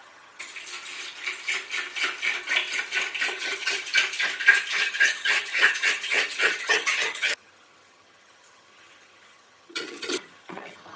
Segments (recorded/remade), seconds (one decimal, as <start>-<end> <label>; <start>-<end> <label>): 0.0-0.5 remade; 0.5-3.3 recorded; 3.3-3.9 remade; 3.9-4.7 recorded; 4.7-11.0 remade